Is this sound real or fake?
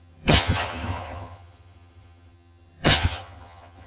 fake